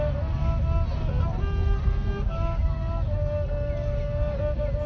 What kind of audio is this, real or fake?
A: real